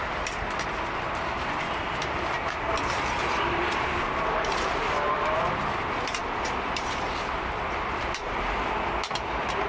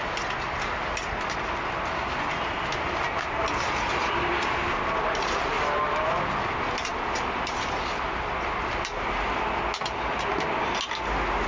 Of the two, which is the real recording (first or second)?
second